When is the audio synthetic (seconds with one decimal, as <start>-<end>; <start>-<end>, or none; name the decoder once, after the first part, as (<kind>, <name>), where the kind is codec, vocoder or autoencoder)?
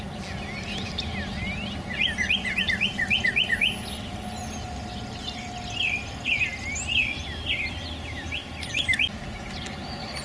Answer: none